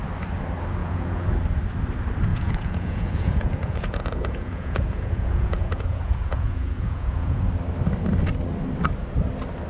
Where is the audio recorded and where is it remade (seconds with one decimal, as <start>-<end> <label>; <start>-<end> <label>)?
0.0-0.8 recorded; 0.8-1.3 remade; 1.3-2.3 recorded; 2.3-7.5 remade; 7.5-9.7 recorded